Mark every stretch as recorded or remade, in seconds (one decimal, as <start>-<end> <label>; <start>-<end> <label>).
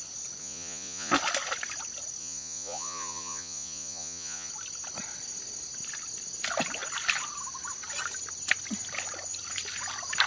0.0-0.4 recorded; 0.4-1.1 remade; 1.1-2.2 recorded; 2.2-4.5 remade; 4.5-10.3 recorded